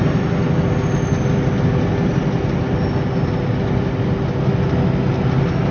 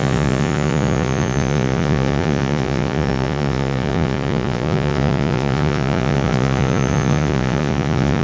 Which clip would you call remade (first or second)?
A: second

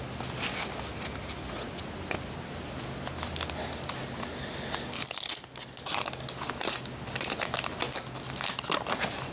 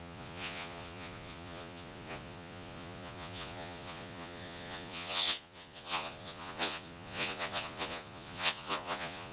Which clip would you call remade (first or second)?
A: second